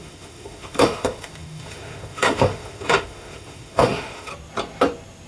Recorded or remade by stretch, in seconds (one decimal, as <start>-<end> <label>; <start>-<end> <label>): 0.0-4.3 remade; 4.3-5.3 recorded